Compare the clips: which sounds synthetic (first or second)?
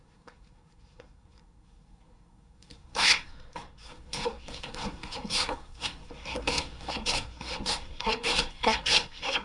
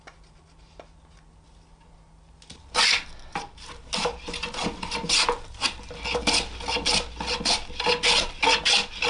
first